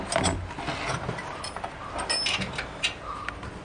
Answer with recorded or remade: recorded